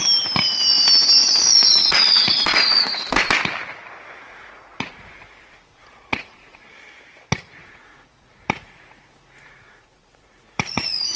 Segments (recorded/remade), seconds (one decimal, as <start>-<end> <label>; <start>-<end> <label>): 0.0-1.2 recorded; 1.2-3.2 remade; 3.2-4.3 recorded; 4.3-6.6 remade; 6.6-7.6 recorded; 7.6-11.2 remade